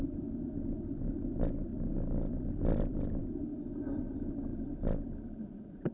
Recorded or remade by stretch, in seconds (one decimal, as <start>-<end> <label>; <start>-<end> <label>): 0.0-5.9 recorded